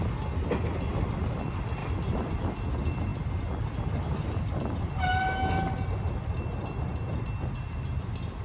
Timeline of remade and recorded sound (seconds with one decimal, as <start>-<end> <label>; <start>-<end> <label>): 0.0-8.4 recorded